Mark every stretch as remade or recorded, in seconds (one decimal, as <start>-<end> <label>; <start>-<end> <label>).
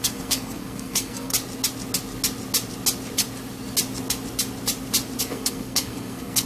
0.0-1.3 remade; 1.3-5.2 recorded; 5.2-6.5 remade